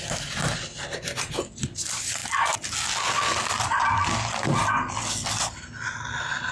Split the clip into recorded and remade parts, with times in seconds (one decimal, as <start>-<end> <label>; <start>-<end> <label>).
0.0-6.5 recorded